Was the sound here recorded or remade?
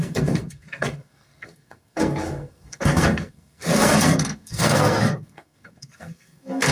remade